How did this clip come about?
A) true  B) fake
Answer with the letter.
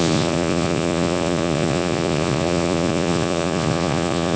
B